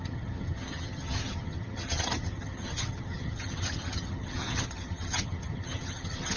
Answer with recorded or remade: remade